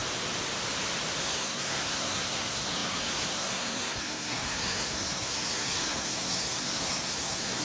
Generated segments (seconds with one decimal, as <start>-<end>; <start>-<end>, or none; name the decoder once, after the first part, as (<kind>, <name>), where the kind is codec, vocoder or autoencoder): 1.2-7.6 (codec, SNAC)